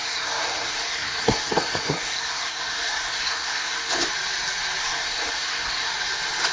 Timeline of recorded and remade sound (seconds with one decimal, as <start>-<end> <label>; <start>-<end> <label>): 0.0-3.9 remade; 3.9-4.8 recorded; 4.8-5.9 remade; 5.9-6.5 recorded